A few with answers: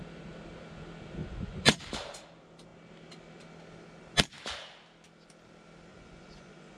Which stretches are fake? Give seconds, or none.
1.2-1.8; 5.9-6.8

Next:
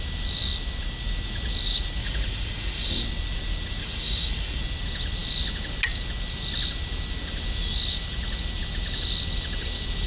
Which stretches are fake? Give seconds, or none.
2.0-3.0; 3.8-4.6

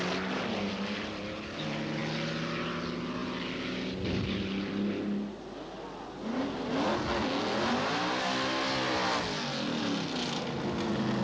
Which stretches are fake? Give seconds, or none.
none

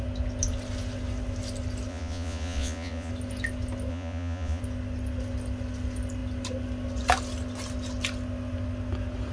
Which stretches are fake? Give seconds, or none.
1.9-3.1; 3.9-4.6

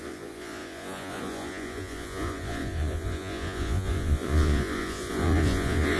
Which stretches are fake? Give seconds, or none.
0.0-6.0

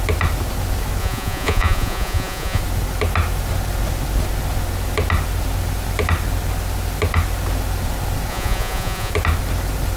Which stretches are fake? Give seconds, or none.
1.0-2.6; 8.3-9.1